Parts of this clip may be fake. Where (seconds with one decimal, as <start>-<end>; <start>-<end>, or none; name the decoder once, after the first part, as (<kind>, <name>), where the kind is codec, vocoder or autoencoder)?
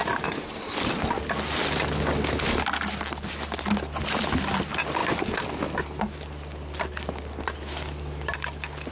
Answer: none